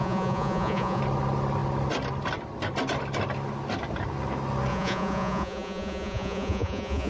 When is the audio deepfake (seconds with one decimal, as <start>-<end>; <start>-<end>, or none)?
0.0-1.0; 4.7-7.1

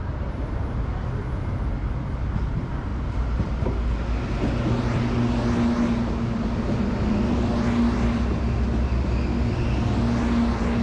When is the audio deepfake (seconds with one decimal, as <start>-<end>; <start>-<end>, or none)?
none

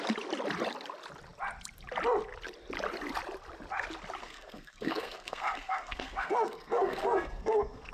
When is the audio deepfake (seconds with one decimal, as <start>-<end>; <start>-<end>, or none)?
4.2-7.9

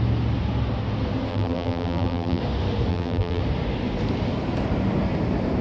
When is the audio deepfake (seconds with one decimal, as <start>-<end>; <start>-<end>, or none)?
1.3-2.4; 2.9-3.4

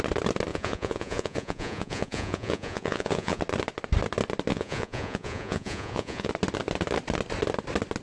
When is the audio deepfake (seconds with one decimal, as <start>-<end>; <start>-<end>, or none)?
0.5-3.4; 4.5-6.3